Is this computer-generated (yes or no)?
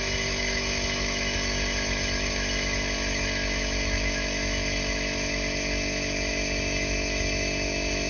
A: yes